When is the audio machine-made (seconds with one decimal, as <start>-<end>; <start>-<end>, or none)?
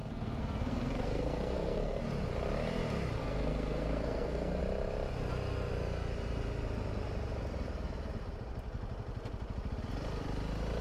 0.0-2.0; 3.2-4.6